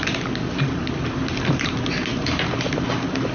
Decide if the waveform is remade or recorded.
recorded